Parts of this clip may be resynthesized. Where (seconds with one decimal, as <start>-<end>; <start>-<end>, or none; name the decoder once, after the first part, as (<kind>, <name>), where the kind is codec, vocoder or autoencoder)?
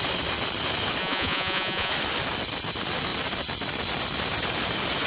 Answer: 1.0-1.9 (vocoder, Vocos)